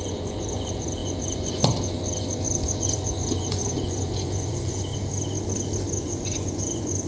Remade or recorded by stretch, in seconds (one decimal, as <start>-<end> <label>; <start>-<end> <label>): 0.0-4.9 remade; 4.9-5.9 recorded; 5.9-7.1 remade